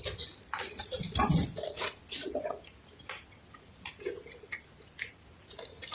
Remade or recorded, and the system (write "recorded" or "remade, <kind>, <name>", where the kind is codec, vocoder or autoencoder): recorded